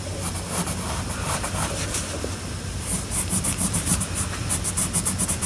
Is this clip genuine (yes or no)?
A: yes